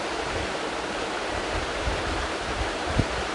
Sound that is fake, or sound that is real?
fake